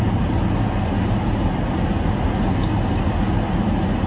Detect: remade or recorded recorded